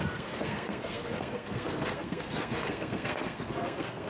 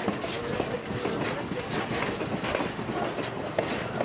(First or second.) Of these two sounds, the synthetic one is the first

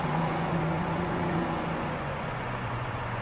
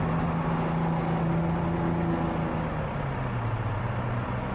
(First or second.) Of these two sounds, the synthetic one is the first